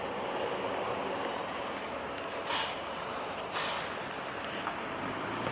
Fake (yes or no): no